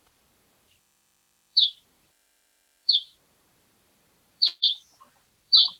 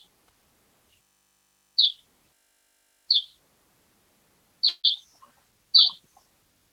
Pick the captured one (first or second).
second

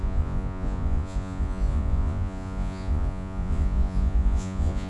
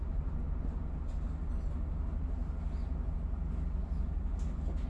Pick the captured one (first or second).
second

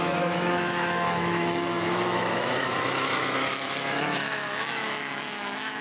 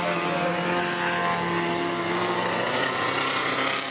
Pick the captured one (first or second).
second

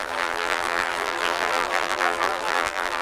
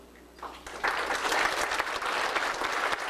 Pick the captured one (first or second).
second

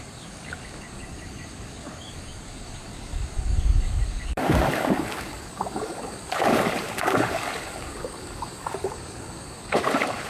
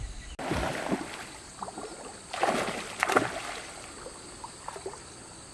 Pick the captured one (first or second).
second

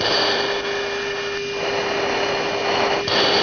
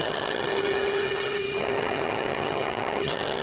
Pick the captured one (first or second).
first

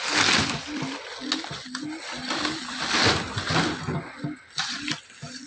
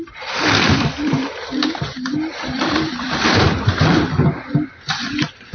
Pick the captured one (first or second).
first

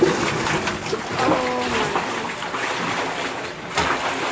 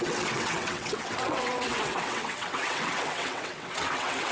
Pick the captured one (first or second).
first